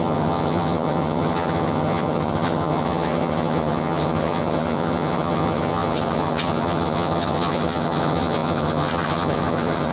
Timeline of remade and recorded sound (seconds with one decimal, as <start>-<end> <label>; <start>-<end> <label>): 0.0-9.9 remade